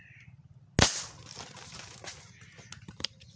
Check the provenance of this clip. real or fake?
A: real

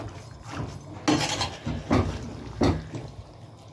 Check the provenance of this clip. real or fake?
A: real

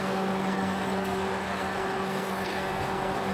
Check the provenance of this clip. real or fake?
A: fake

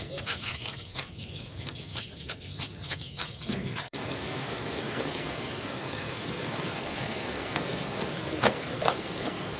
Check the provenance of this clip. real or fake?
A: fake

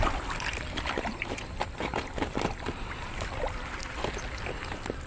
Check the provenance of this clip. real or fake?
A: real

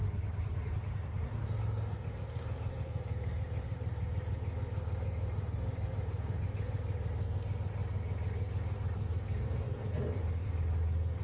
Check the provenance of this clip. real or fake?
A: real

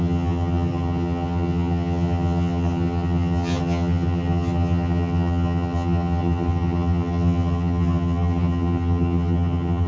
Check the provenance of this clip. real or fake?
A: fake